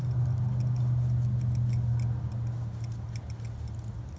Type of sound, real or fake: real